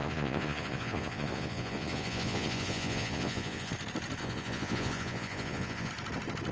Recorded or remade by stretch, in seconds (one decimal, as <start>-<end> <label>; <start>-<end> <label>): 0.0-3.7 remade; 3.7-4.2 recorded; 4.2-5.9 remade; 5.9-6.5 recorded